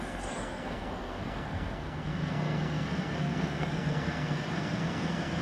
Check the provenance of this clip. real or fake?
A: fake